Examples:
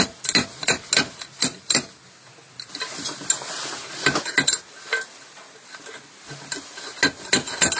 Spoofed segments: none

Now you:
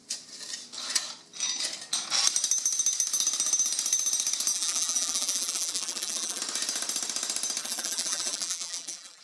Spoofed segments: 4.5-6.4 (vocoder, BigVGAN v2); 7.6-9.2

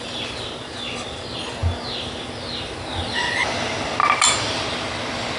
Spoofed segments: 4.0-5.0 (vocoder, BigVGAN v2)

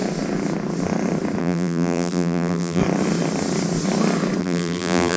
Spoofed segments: 1.4-2.8 (vocoder, BigVGAN v2); 4.4-5.2

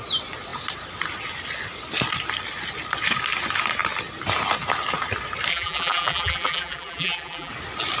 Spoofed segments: 5.5-7.5 (vocoder, BigVGAN v2)

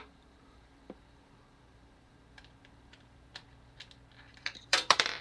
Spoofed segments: 0.0-3.3 (vocoder, BigVGAN v2); 4.3-5.2

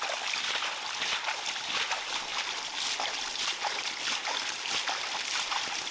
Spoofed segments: 2.3-3.1 (vocoder, BigVGAN v2)

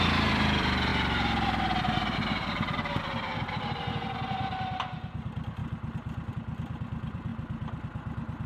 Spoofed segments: 0.0-0.9 (vocoder, BigVGAN v2); 3.0-5.6; 6.3-7.3